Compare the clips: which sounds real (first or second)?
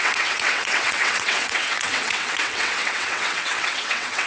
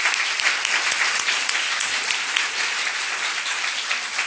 second